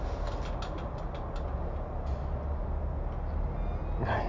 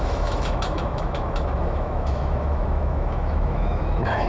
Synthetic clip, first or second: second